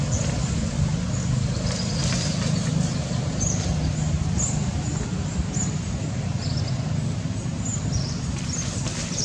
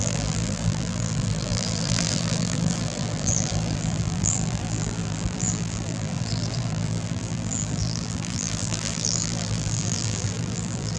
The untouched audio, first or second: first